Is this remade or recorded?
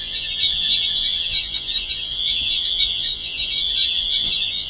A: remade